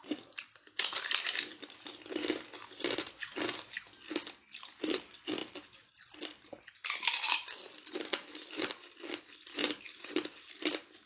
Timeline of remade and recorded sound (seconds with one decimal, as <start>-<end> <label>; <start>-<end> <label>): 0.0-8.1 recorded; 8.1-8.7 remade; 8.7-9.6 recorded; 9.6-11.1 remade